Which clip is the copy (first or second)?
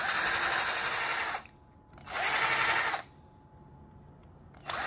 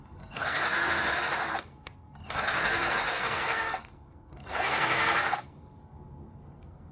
second